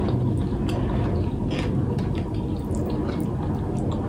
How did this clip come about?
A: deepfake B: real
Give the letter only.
B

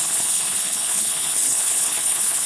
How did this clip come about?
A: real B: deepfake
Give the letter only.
B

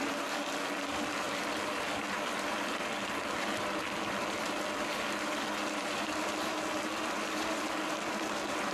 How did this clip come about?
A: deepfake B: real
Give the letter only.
A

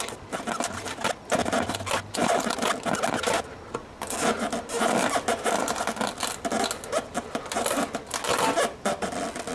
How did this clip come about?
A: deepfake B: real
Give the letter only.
B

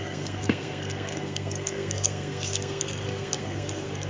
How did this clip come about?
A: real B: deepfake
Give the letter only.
B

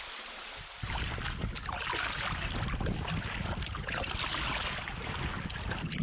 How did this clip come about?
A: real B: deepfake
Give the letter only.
A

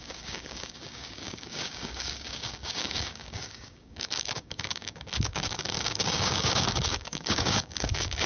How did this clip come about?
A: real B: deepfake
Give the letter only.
B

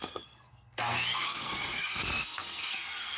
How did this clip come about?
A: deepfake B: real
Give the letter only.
A